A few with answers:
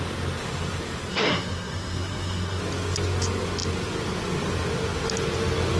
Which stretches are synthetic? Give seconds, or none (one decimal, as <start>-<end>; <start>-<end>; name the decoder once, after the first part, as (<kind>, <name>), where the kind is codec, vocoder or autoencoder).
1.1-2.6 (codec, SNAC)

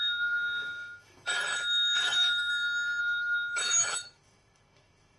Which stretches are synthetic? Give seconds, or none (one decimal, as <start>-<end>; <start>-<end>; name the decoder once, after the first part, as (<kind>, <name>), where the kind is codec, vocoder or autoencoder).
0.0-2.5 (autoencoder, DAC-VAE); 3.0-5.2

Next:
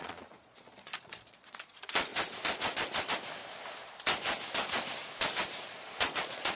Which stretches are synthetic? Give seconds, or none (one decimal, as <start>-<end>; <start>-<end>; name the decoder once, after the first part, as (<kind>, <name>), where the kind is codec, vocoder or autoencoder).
0.0-2.1 (vocoder, Vocos); 6.0-6.5